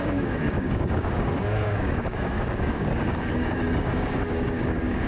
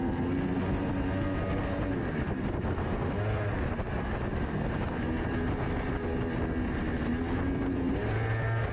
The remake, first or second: first